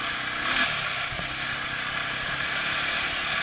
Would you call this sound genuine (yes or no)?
yes